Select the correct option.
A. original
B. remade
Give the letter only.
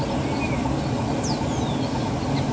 A